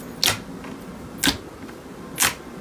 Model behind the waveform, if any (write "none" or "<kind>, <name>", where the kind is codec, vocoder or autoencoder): none